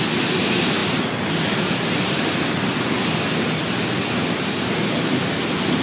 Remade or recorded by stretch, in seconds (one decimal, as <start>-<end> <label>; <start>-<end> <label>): 0.0-5.8 recorded